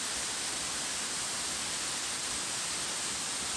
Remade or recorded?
recorded